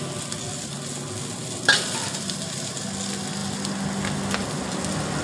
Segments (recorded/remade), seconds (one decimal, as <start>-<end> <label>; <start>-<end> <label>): 0.0-1.4 recorded; 1.4-2.7 remade; 2.7-5.2 recorded